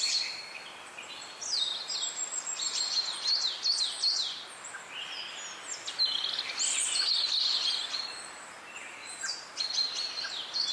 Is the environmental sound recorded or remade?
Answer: recorded